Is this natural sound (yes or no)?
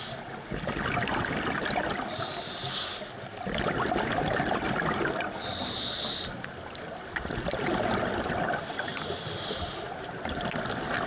yes